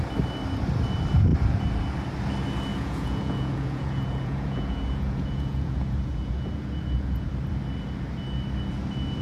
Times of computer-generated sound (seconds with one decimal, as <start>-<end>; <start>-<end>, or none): 2.7-7.3